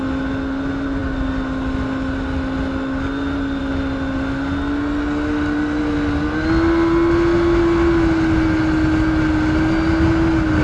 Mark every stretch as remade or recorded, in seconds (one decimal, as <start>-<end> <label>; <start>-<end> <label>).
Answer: 0.0-10.6 recorded